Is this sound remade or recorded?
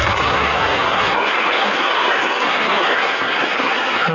remade